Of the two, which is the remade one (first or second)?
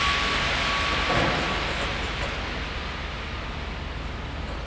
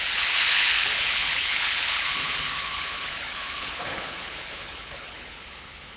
second